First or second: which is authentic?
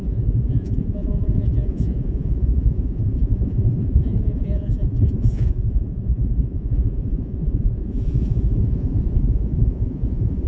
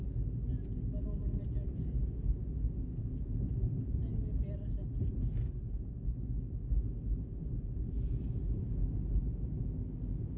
second